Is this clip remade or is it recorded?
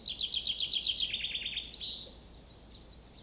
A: recorded